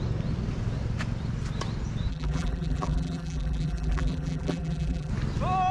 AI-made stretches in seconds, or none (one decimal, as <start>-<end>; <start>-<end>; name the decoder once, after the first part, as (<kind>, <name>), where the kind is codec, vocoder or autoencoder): 2.1-5.1 (vocoder, BigVGAN v2)